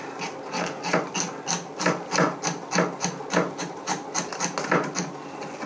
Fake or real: real